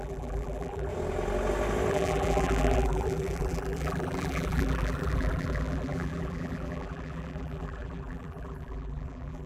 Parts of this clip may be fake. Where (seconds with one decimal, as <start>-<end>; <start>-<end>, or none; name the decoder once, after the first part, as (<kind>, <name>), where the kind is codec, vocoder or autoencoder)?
0.0-0.9 (vocoder, BigVGAN v2); 1.9-9.5